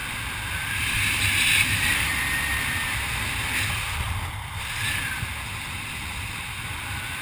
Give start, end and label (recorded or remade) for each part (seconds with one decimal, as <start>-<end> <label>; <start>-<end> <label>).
0.0-1.1 recorded; 1.1-2.1 remade; 2.1-6.4 recorded; 6.4-7.2 remade